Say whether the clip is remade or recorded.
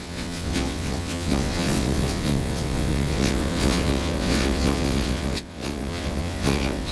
remade